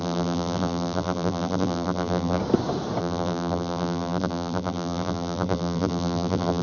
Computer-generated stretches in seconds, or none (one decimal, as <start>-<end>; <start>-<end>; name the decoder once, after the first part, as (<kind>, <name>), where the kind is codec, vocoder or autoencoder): 0.0-2.4 (vocoder, BigVGAN v2); 3.0-6.6